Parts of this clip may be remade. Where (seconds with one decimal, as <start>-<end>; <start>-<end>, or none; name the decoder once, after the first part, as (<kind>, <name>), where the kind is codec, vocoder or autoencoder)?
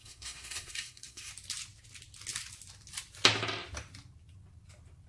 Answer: 0.0-1.3 (codec, SNAC)